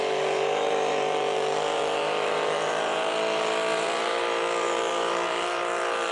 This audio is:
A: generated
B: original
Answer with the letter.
A